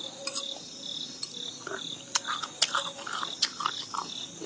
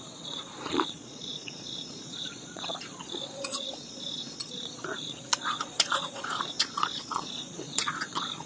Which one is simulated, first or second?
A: second